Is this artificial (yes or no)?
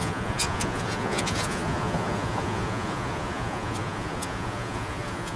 yes